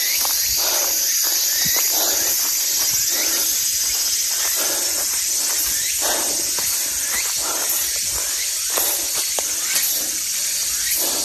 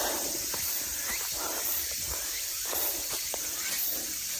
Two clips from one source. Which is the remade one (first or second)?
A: second